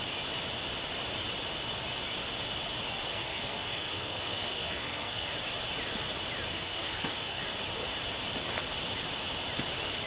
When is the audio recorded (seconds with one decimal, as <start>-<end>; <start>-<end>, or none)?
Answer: 0.0-3.1; 5.3-6.5; 7.4-10.1